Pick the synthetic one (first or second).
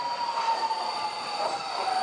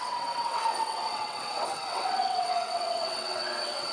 second